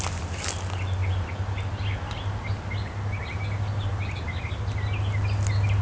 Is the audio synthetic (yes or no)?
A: no